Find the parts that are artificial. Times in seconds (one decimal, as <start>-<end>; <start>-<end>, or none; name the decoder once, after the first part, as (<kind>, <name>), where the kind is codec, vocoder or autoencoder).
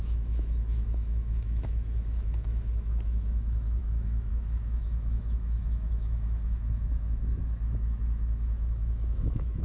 0.0-9.6 (autoencoder, DAC-VAE)